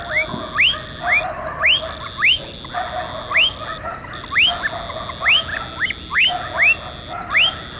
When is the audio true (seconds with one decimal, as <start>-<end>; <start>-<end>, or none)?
0.0-7.8